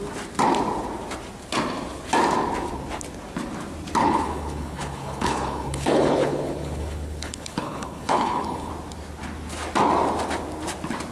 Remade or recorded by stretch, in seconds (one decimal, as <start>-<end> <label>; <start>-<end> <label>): 0.0-4.0 recorded; 4.0-8.7 remade; 8.7-11.1 recorded